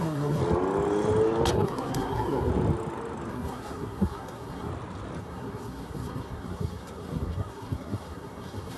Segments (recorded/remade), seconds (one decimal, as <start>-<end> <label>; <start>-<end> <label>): 0.0-0.4 remade; 0.4-1.5 recorded; 1.5-2.5 remade; 2.5-3.3 recorded; 3.3-4.7 remade; 4.7-5.2 recorded; 5.2-8.8 remade